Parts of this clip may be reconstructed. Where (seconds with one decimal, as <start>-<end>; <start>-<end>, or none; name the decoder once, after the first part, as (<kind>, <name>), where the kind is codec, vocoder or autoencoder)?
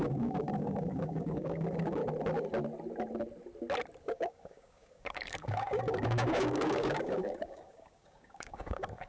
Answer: 0.0-2.0 (codec, DAC); 4.0-9.1